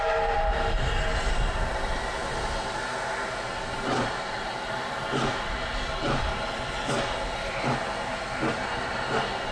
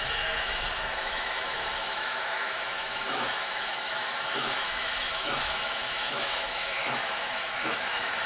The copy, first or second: second